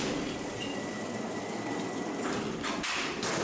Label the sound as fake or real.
fake